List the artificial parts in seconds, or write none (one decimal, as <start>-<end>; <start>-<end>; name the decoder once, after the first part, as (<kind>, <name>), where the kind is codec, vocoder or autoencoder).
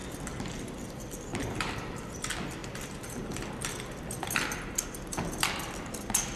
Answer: 0.0-2.1 (vocoder, BigVGAN v2)